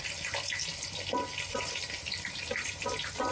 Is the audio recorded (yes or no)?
yes